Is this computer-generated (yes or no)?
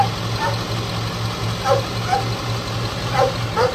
no